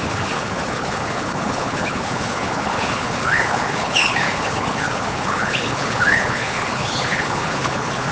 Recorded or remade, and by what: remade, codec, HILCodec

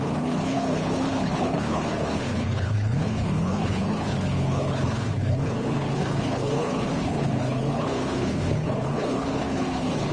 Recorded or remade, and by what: remade, codec, HILCodec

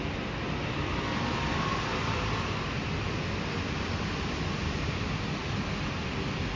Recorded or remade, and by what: recorded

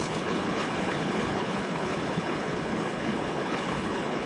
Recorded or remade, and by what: remade, codec, HILCodec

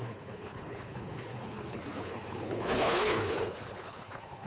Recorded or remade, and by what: remade, codec, HILCodec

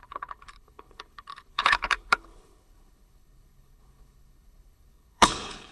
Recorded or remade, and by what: remade, codec, HILCodec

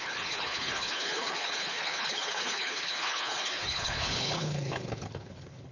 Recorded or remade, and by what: remade, codec, HILCodec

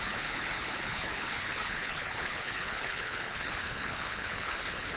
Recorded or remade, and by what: remade, codec, HILCodec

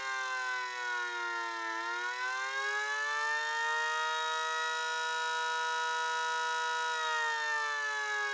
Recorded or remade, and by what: recorded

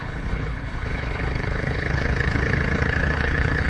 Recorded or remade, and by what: remade, codec, HILCodec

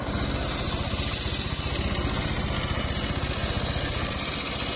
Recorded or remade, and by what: recorded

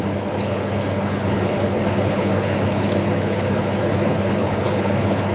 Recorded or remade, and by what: remade, codec, HILCodec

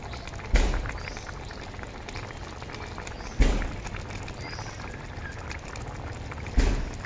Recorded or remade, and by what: recorded